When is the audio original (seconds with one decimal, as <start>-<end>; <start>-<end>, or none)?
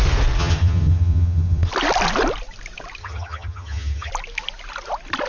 0.0-0.4; 1.7-3.0; 4.1-5.3